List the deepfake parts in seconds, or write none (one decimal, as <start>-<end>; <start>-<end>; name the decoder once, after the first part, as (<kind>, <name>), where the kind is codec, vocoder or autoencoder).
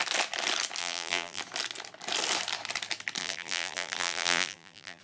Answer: 0.8-1.4 (vocoder, BigVGAN v2); 3.2-5.0